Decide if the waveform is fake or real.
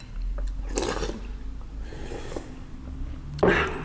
real